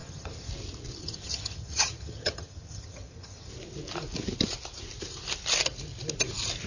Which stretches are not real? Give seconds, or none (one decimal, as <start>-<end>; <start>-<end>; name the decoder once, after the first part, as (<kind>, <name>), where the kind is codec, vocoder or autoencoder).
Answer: 0.0-0.5 (vocoder, HiFi-GAN); 1.0-3.5